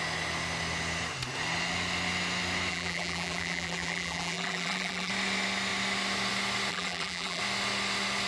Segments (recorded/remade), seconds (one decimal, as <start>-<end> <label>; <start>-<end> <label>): 0.0-2.7 recorded; 2.7-5.1 remade; 5.1-6.7 recorded; 6.7-7.4 remade; 7.4-8.3 recorded